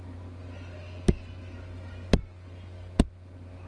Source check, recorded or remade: recorded